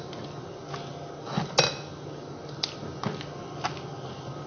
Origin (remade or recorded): recorded